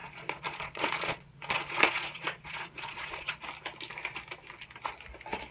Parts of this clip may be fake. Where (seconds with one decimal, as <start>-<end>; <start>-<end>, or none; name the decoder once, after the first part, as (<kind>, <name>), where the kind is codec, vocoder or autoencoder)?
0.0-3.3 (vocoder, Vocos)

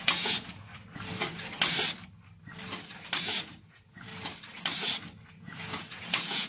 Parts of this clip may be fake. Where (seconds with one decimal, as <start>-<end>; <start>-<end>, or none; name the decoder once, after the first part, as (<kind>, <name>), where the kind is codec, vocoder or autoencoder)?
0.0-0.7 (vocoder, Vocos); 3.2-4.1; 5.3-6.5